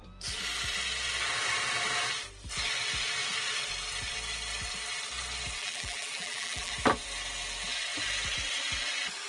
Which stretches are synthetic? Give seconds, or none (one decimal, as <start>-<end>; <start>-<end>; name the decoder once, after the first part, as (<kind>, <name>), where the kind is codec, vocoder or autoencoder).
5.6-6.7 (vocoder, BigVGAN v2)